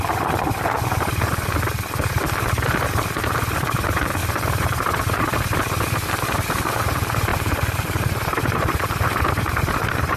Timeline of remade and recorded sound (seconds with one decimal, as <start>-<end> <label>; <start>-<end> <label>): 0.0-4.2 recorded; 4.2-5.4 remade; 5.4-7.3 recorded; 7.3-10.2 remade